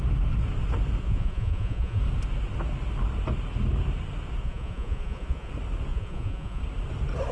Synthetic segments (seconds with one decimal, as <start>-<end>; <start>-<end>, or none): 1.0-2.0; 4.4-5.5; 5.9-6.6